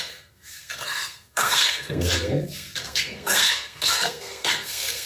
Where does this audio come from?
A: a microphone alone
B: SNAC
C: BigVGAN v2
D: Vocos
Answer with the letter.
B